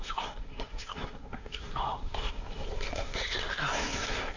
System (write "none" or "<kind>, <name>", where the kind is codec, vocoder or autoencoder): codec, SNAC